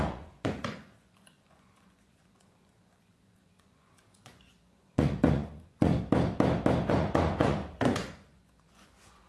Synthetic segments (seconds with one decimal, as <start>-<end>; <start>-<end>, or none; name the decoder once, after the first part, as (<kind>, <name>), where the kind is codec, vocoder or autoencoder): 0.0-5.9 (vocoder, Vocos); 6.9-9.3